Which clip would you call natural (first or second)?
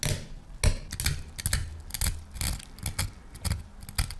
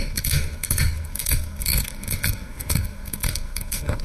first